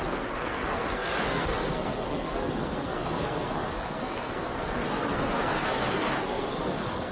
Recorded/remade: remade